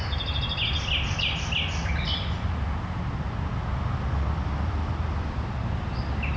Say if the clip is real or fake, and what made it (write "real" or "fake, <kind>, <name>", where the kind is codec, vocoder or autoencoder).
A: real